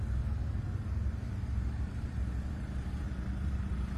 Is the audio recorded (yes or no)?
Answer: no